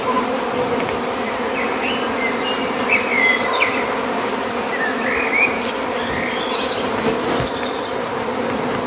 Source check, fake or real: real